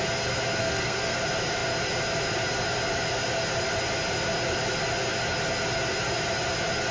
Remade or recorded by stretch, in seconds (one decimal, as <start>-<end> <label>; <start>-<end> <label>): 0.0-0.6 recorded; 0.6-1.2 remade; 1.2-6.9 recorded